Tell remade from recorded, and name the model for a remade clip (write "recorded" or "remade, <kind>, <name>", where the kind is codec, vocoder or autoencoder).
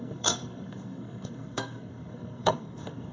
remade, codec, SNAC